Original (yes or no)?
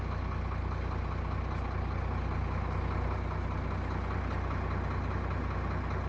yes